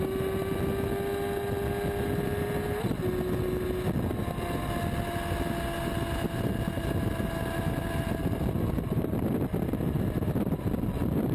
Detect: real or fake real